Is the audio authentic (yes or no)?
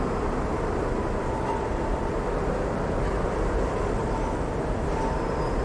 yes